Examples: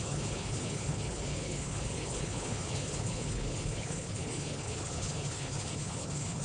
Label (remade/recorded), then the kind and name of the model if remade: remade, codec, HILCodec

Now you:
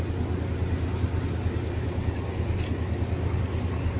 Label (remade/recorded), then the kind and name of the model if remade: recorded